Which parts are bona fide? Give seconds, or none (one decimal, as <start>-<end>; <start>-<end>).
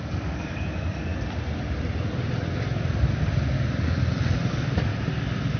1.1-4.5; 4.9-5.6